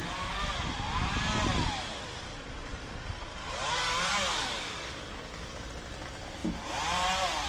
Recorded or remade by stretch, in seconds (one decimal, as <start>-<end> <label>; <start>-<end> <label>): 0.0-0.5 remade; 0.5-3.4 recorded; 3.4-5.5 remade; 5.5-7.5 recorded